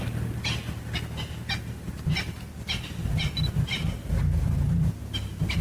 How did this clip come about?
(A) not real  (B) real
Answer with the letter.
B